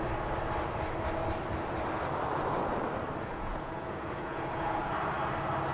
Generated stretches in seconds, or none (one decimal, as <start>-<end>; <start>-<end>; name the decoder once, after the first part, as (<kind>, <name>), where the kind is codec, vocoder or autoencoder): 3.3-4.8 (vocoder, Vocos)

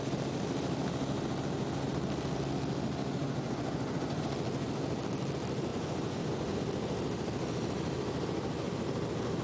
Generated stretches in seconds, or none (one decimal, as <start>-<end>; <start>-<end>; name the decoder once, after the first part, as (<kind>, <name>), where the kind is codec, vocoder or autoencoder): 3.2-4.3 (vocoder, Vocos); 5.7-6.6

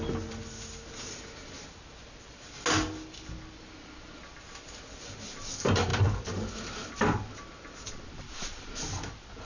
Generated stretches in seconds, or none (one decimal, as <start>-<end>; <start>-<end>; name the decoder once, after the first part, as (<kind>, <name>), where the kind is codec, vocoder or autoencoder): none

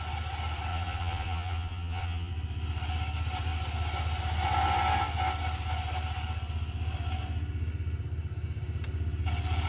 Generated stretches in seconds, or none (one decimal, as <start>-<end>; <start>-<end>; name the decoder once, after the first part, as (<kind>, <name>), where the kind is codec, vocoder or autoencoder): 0.7-2.3 (vocoder, Vocos)